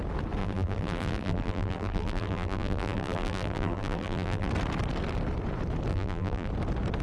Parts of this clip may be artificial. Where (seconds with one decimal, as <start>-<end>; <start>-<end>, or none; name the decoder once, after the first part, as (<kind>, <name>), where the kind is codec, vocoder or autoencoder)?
0.4-4.5 (vocoder, BigVGAN v2); 5.9-6.5